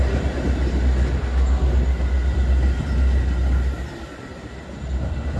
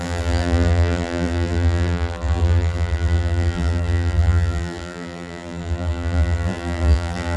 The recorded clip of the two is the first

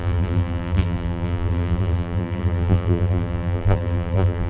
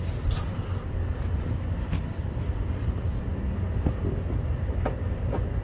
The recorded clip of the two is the second